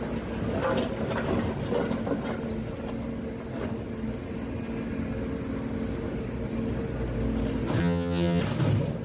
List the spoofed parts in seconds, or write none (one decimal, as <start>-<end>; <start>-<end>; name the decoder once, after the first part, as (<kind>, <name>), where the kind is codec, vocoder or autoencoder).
7.8-8.4 (vocoder, HiFi-GAN)